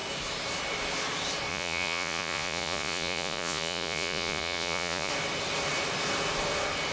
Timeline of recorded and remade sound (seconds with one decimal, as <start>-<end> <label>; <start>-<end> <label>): 0.0-1.5 recorded; 1.5-5.1 remade; 5.1-6.9 recorded